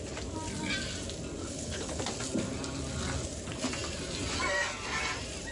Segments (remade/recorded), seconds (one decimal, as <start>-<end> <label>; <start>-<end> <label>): 0.0-1.4 recorded; 1.4-2.0 remade; 2.0-5.5 recorded